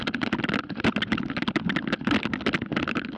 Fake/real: real